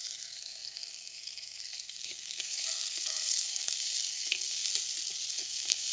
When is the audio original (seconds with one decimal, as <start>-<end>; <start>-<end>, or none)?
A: 4.7-5.3